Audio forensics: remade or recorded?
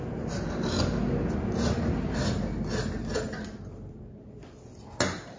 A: recorded